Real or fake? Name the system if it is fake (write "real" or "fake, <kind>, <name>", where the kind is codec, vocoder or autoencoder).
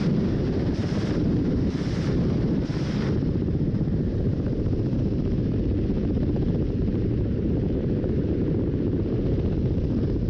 fake, vocoder, BigVGAN v2